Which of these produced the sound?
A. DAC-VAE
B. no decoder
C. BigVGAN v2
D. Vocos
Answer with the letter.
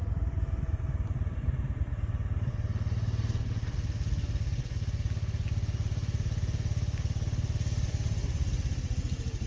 B